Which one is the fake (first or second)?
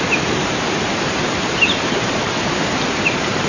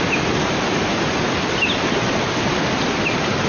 first